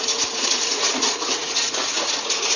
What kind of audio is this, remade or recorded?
remade